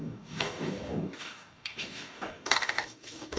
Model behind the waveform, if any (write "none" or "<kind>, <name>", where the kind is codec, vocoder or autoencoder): codec, DAC